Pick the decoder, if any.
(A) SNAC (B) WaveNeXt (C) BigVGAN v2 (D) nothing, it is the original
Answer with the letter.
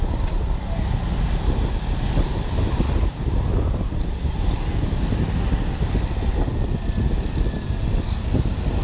D